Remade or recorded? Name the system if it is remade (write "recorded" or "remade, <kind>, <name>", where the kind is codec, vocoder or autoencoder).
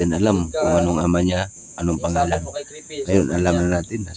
remade, vocoder, Vocos